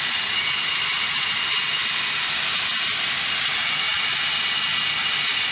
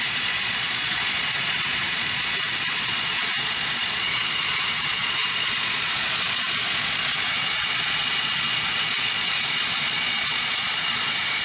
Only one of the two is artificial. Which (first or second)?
second